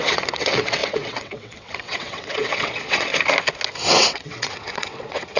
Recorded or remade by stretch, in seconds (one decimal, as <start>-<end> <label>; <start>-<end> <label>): 0.0-3.1 remade; 3.1-3.9 recorded; 3.9-5.4 remade